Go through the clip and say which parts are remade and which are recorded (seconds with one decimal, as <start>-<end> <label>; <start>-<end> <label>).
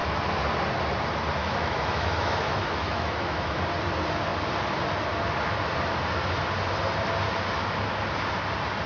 0.0-1.4 recorded; 1.4-3.6 remade; 3.6-8.9 recorded